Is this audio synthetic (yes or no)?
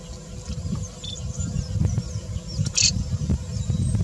no